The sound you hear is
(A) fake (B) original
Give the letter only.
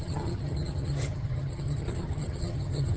A